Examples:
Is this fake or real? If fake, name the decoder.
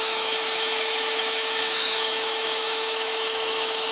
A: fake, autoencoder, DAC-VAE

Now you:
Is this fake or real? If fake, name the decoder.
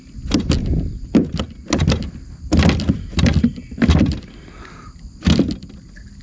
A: real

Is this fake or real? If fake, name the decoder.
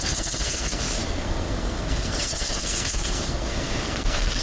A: fake, codec, SNAC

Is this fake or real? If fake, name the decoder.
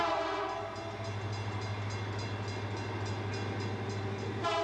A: real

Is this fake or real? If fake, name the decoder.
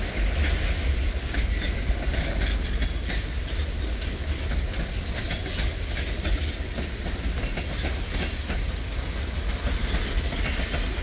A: real